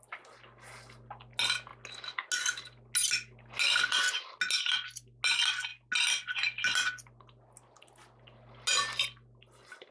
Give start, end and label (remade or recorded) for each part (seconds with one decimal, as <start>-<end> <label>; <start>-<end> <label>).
0.0-9.9 recorded